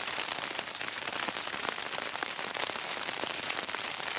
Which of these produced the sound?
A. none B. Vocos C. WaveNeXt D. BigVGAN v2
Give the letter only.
D